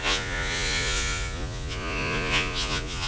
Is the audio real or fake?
fake